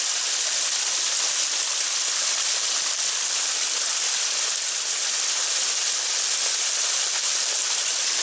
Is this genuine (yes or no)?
yes